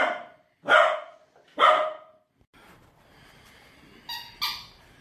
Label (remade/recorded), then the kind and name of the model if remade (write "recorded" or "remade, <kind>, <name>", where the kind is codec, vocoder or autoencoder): recorded